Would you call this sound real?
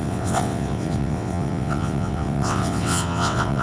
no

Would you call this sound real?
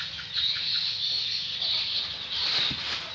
yes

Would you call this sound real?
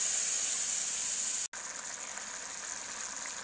yes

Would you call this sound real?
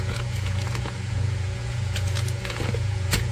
no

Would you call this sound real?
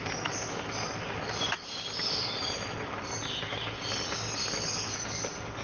yes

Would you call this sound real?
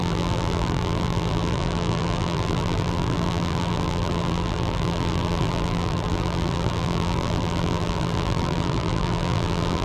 no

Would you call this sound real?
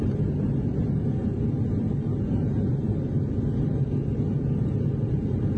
yes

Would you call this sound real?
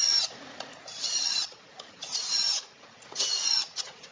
no